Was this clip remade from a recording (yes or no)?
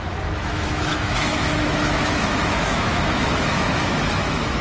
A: yes